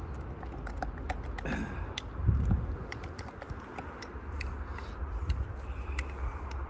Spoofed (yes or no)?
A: no